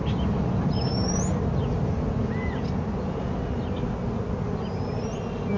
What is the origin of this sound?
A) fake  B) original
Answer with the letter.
B